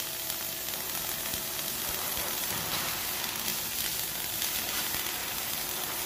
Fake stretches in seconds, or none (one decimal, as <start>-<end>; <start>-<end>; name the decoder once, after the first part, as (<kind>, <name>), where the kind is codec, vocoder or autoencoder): 2.1-2.7 (vocoder, BigVGAN v2); 5.2-6.1